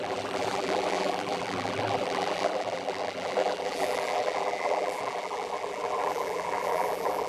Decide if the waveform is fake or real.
fake